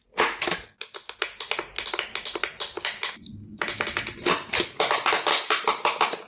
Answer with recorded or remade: recorded